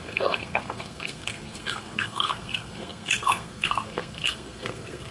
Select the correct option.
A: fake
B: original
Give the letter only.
A